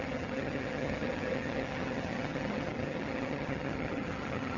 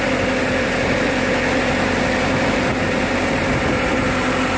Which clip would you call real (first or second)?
second